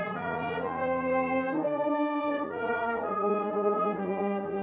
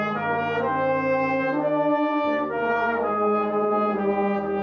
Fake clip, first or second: first